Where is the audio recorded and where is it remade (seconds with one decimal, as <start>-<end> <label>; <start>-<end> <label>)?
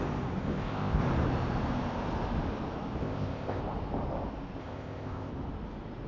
0.0-0.4 recorded; 0.4-1.0 remade; 1.0-3.0 recorded; 3.0-3.6 remade; 3.6-4.6 recorded; 4.6-5.3 remade; 5.3-6.1 recorded